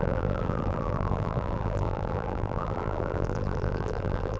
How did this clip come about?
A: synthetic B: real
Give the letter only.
A